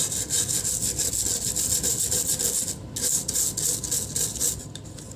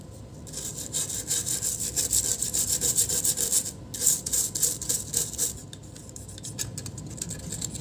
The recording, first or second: first